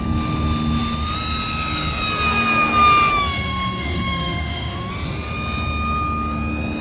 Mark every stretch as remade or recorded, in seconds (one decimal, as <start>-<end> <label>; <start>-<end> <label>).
0.0-3.1 recorded; 3.1-4.9 remade; 4.9-6.8 recorded